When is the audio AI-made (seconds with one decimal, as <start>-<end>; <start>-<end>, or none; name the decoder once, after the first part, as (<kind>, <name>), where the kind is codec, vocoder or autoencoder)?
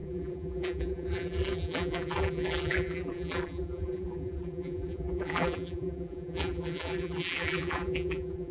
0.0-8.5 (vocoder, BigVGAN v2)